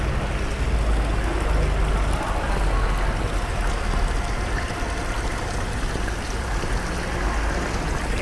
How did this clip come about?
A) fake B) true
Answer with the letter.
B